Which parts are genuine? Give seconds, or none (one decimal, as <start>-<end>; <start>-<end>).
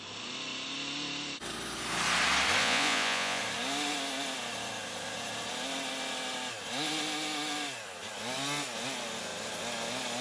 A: 0.0-2.6; 3.4-10.2